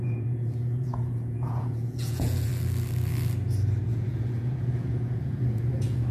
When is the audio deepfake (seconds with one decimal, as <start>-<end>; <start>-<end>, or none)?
0.0-2.5; 3.9-6.1